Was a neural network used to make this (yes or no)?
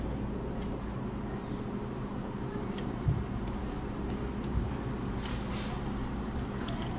yes